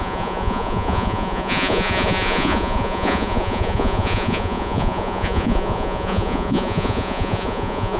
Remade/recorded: remade